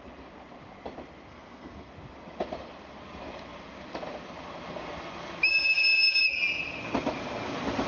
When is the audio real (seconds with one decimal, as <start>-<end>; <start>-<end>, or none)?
0.0-1.3; 1.9-7.9